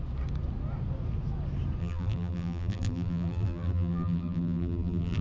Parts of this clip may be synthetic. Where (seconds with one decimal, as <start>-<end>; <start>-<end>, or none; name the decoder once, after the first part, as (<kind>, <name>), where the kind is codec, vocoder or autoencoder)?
1.8-5.2 (vocoder, BigVGAN v2)